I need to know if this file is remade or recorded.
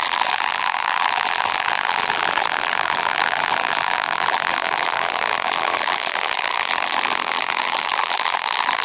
remade